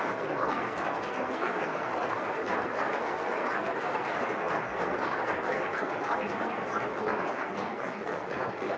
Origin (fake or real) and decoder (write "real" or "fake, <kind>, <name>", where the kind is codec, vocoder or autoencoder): fake, codec, SNAC